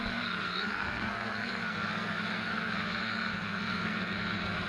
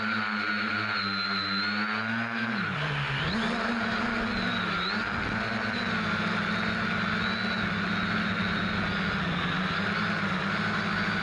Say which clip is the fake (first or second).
first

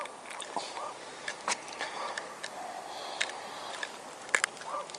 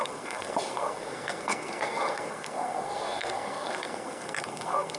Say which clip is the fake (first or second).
second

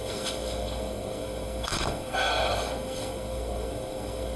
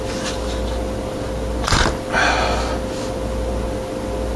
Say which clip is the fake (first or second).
first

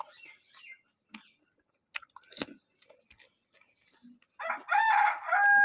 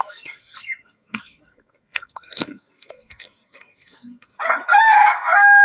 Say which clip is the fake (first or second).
second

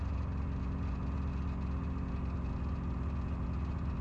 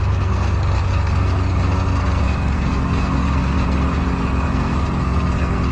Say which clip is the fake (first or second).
second